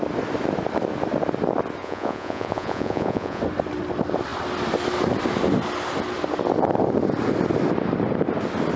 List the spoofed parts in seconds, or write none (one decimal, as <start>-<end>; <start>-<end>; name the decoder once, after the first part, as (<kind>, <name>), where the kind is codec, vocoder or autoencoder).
1.8-3.4 (vocoder, Vocos)